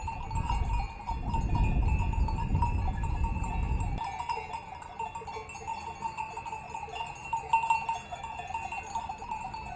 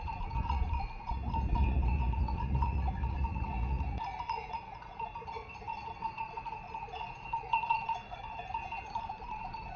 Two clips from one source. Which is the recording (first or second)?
first